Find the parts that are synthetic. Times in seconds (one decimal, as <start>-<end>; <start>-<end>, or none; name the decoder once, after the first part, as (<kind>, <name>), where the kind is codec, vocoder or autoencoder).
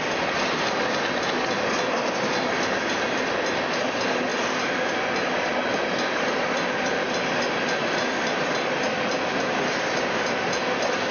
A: none